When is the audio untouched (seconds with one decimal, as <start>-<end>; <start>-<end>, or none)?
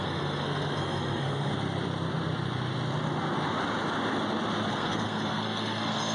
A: 1.5-4.7